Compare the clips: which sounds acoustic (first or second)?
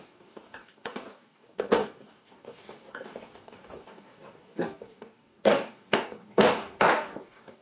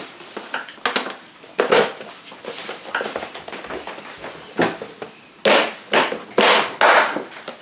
second